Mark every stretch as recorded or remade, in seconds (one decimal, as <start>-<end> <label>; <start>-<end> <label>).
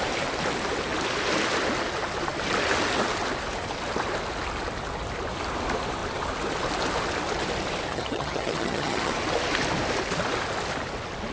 0.0-7.9 recorded; 7.9-9.1 remade; 9.1-11.3 recorded